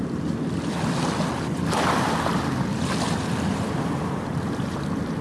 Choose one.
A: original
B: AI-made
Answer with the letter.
A